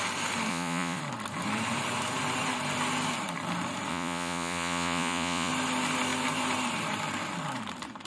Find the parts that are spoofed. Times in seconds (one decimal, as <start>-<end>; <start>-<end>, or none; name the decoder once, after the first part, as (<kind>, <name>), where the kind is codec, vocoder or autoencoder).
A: 0.5-1.0 (vocoder, Vocos); 3.9-5.5